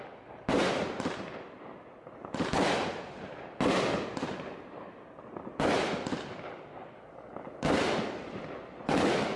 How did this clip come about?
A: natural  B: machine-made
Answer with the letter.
A